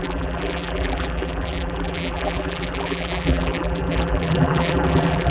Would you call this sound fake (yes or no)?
yes